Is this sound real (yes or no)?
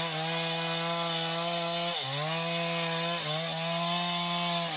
yes